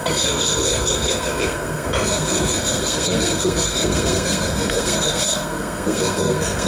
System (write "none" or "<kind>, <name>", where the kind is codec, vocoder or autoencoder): codec, SNAC